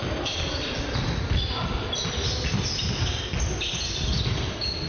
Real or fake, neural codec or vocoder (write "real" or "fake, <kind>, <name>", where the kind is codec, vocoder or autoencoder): real